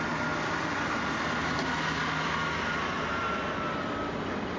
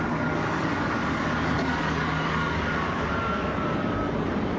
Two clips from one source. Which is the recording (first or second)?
first